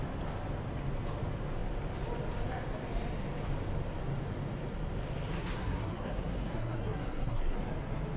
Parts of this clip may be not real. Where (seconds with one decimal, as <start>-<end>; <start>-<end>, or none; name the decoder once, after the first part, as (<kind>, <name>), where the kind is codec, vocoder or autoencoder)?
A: 5.3-7.6 (codec, SNAC)